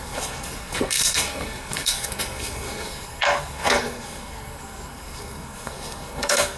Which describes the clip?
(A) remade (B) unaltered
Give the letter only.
A